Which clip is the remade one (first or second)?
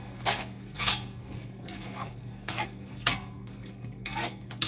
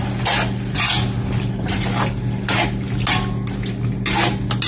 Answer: first